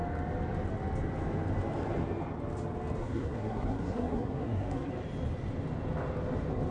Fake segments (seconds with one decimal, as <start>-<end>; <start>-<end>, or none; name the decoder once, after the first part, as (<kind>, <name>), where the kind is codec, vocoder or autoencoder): 3.0-4.9 (codec, SNAC)

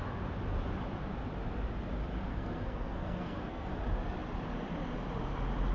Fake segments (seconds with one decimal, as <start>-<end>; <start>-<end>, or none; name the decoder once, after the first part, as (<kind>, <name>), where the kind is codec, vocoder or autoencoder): 2.3-3.7 (codec, SNAC)

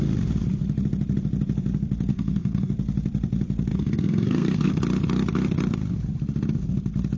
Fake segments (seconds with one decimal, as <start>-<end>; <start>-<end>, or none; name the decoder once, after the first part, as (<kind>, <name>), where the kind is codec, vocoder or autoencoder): 2.1-2.7 (codec, SNAC); 3.7-4.7